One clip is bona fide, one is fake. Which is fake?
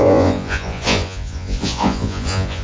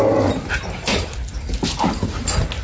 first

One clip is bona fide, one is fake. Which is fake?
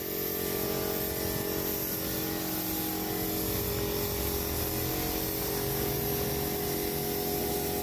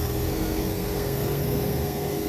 second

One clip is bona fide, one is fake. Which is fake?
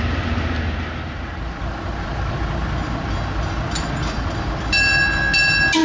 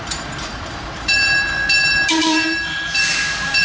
second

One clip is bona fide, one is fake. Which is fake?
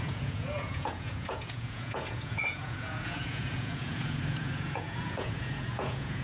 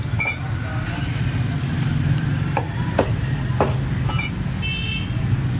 first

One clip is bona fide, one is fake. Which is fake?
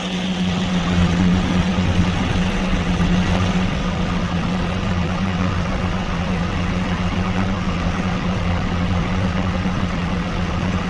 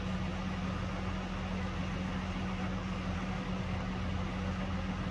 first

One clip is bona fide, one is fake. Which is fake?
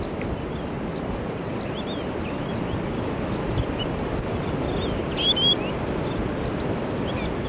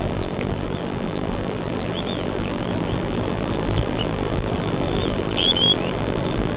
second